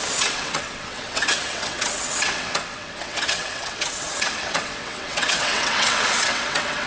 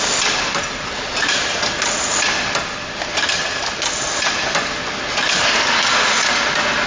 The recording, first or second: second